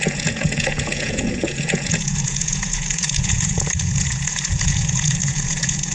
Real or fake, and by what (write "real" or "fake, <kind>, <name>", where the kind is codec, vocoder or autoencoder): fake, vocoder, Vocos